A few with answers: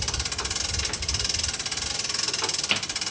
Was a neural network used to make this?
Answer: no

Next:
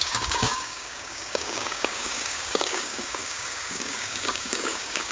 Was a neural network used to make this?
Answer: yes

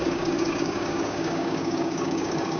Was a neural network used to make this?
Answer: yes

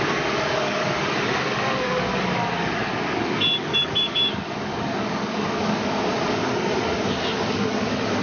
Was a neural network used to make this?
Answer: yes